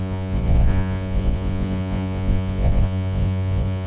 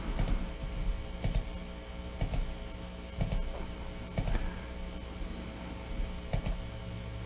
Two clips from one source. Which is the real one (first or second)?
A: second